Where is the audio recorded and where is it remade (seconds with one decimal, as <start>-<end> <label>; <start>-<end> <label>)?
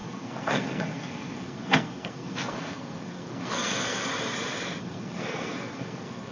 0.0-4.1 remade; 4.1-4.8 recorded; 4.8-6.3 remade